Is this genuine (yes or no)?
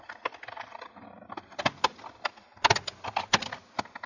yes